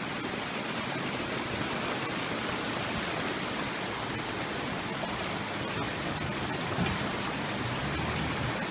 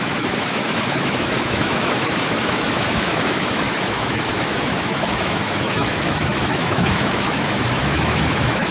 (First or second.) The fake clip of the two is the second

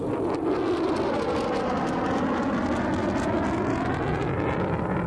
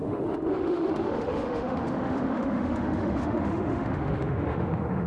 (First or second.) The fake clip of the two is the second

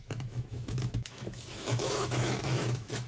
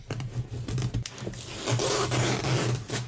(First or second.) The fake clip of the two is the first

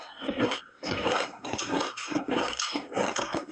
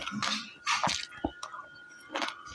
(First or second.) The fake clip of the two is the first